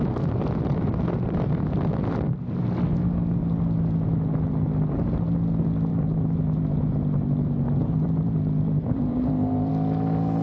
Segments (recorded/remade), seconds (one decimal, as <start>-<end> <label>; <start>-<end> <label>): 0.0-5.9 recorded; 5.9-9.7 remade; 9.7-10.4 recorded